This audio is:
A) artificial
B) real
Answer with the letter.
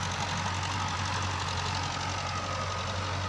B